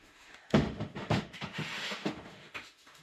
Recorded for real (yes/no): no